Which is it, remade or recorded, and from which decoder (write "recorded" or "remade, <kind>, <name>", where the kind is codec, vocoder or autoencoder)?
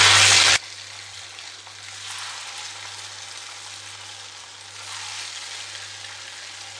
recorded